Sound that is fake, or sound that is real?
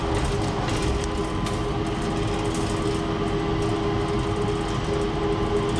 real